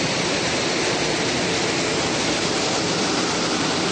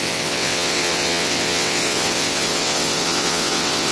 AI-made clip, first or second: second